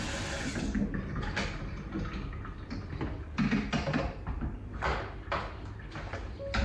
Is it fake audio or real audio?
real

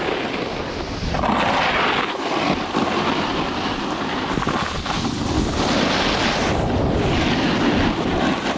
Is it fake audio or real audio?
real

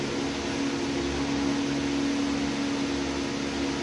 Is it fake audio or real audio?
real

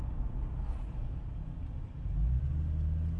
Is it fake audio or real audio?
real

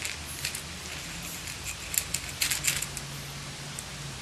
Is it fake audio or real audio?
real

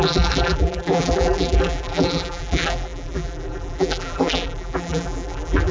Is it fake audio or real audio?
fake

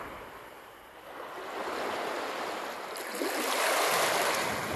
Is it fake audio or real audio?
real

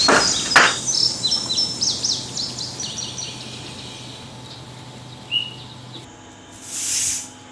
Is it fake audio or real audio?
real